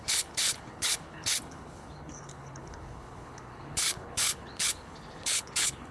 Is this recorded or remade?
remade